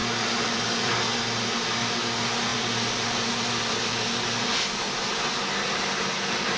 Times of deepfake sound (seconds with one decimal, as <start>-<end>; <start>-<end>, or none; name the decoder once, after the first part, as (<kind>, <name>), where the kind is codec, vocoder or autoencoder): 0.0-0.9 (vocoder, BigVGAN v2); 2.5-5.2